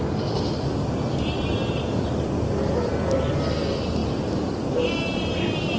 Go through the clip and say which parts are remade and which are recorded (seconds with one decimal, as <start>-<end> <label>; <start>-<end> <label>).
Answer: 0.0-5.8 recorded